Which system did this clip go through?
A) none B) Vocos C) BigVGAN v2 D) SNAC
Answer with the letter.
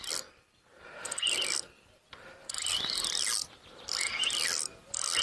A